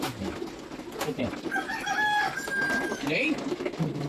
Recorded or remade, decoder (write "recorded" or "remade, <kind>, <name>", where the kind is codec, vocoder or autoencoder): recorded